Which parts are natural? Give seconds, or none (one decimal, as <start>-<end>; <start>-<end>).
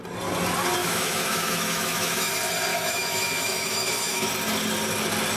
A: 0.0-0.8; 2.3-2.7; 4.3-5.4